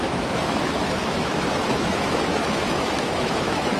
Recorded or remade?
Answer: remade